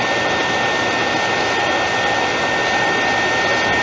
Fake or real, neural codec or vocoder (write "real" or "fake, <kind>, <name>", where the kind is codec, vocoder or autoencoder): real